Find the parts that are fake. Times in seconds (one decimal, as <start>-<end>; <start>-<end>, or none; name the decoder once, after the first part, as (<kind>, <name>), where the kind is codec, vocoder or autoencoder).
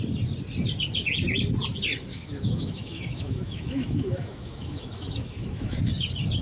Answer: 2.1-5.9 (autoencoder, DAC-VAE)